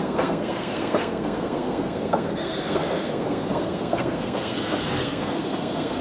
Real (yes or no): no